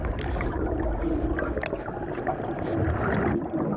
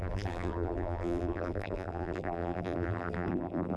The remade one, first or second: second